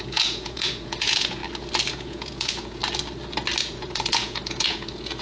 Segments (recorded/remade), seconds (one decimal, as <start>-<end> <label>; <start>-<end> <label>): 0.0-1.4 remade; 1.4-1.9 recorded; 1.9-2.8 remade; 2.8-3.6 recorded; 3.6-5.2 remade